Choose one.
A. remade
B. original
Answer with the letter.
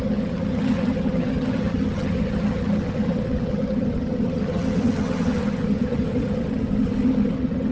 A